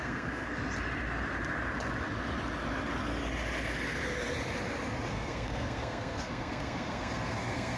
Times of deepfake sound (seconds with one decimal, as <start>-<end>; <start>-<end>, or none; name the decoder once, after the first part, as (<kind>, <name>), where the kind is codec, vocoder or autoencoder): 0.0-0.6 (codec, SNAC); 5.1-7.8